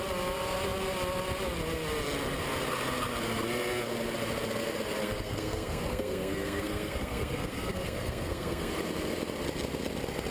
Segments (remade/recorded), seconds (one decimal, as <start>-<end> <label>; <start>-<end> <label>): 0.0-5.0 recorded; 5.0-8.7 remade; 8.7-10.3 recorded

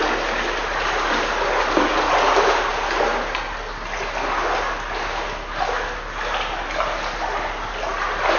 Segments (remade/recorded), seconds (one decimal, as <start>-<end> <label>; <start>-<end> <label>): 0.0-8.4 recorded

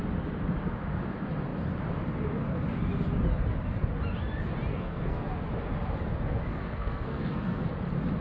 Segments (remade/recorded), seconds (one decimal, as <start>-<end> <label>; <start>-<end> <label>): 0.0-4.7 recorded; 4.7-5.3 remade; 5.3-6.5 recorded; 6.5-7.7 remade; 7.7-8.2 recorded

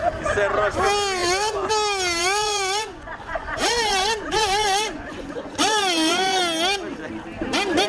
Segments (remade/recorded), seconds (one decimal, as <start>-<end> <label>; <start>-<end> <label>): 0.0-1.2 recorded; 1.2-1.7 remade; 1.7-2.2 recorded; 2.2-6.4 remade; 6.4-7.9 recorded

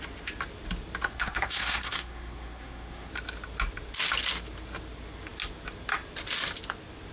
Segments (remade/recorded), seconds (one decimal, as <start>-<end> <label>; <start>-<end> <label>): 0.0-1.1 recorded; 1.1-3.1 remade; 3.1-7.1 recorded

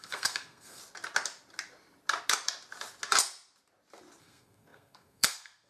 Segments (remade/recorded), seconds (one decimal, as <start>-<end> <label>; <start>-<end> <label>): 0.0-0.8 remade; 0.8-4.2 recorded; 4.2-5.7 remade

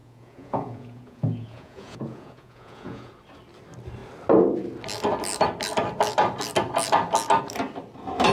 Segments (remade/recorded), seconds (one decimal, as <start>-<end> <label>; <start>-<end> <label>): 0.0-3.1 remade; 3.1-8.3 recorded

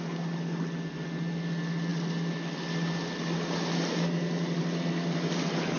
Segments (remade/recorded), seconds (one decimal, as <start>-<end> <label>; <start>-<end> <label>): 0.0-5.8 recorded